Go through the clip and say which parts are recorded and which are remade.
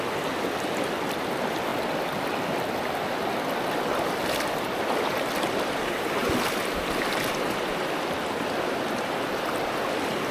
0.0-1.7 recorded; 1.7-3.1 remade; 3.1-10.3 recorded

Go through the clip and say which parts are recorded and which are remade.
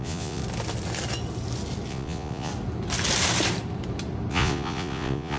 0.0-0.4 remade; 0.4-1.9 recorded; 1.9-2.5 remade; 2.5-4.3 recorded; 4.3-5.4 remade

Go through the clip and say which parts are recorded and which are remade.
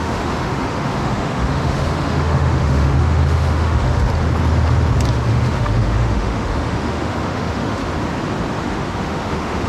0.0-4.1 remade; 4.1-5.1 recorded; 5.1-7.8 remade; 7.8-8.6 recorded; 8.6-9.7 remade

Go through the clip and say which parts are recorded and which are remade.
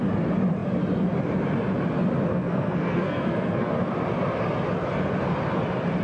0.0-2.3 recorded; 2.3-3.7 remade; 3.7-6.0 recorded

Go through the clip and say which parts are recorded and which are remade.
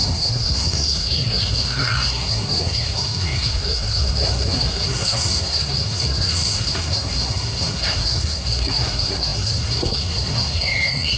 0.0-11.2 remade